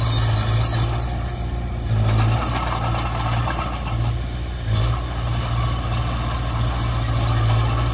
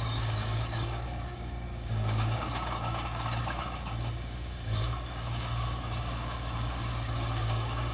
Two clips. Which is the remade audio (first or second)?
second